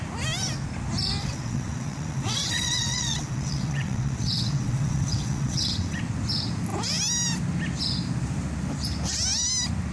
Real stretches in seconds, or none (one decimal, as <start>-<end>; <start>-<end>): 0.0-1.2; 6.0-9.9